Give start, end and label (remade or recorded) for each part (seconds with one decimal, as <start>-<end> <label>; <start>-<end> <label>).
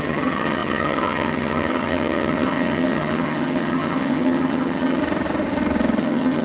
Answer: 0.0-5.0 remade; 5.0-6.0 recorded; 6.0-6.4 remade